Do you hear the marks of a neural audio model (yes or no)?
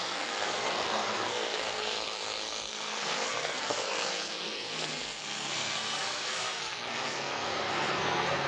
yes